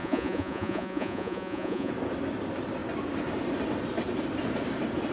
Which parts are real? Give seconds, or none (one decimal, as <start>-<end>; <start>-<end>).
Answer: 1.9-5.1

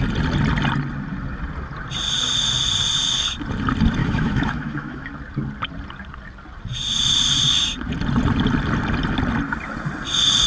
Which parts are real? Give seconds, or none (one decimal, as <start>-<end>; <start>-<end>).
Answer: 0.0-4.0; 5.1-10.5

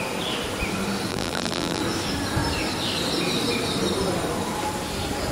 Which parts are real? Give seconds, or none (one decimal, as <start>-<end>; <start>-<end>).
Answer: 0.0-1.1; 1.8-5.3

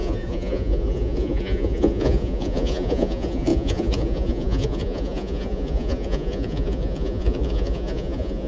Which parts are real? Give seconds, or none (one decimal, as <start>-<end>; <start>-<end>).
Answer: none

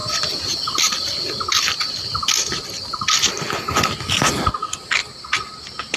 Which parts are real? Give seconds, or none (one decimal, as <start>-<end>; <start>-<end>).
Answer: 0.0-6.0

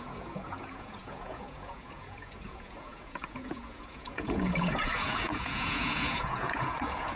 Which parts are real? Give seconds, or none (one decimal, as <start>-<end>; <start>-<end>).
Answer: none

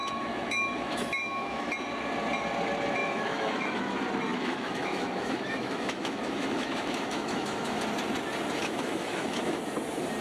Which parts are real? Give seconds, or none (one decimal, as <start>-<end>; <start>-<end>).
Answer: 1.7-3.0; 3.8-4.3; 7.8-8.6; 9.6-10.2